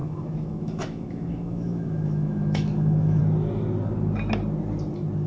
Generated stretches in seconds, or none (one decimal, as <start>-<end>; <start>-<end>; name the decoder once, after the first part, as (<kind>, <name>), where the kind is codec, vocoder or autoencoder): 0.0-3.2 (autoencoder, DAC-VAE)